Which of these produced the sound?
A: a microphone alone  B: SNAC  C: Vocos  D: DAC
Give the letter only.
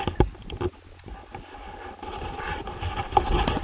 A